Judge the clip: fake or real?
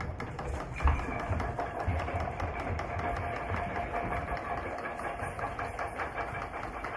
real